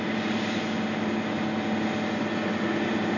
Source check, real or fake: real